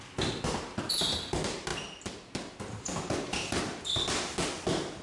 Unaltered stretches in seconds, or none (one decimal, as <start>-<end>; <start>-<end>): 0.0-5.0